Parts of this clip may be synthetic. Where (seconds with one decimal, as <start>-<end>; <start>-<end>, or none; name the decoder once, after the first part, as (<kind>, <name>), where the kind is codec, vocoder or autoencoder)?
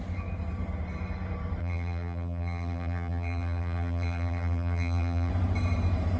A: 1.6-5.3 (vocoder, BigVGAN v2)